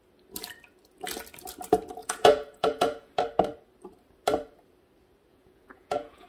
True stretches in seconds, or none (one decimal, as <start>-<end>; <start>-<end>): 0.0-2.0; 3.1-5.3